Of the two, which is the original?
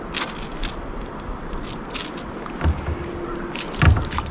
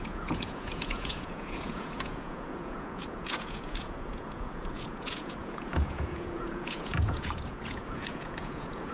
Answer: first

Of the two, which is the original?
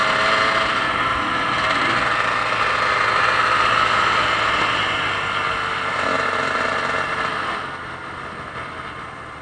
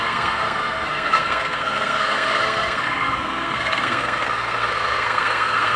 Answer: first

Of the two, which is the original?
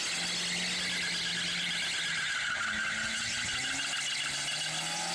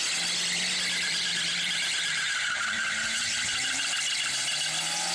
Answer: first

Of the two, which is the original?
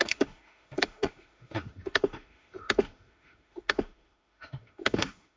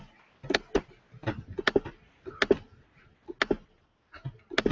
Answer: second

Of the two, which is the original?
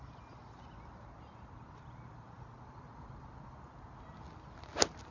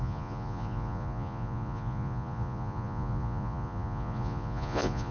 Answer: first